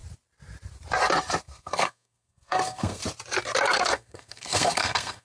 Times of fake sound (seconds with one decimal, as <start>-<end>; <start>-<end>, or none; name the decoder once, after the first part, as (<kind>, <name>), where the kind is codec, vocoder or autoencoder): 1.4-3.0 (codec, SNAC); 3.6-5.2